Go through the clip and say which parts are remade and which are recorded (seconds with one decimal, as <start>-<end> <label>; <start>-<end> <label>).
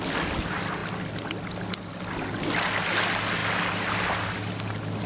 0.0-5.1 recorded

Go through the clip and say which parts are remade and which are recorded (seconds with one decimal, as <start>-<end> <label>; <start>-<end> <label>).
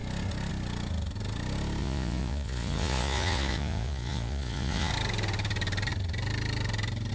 0.0-1.8 recorded; 1.8-4.9 remade; 4.9-7.1 recorded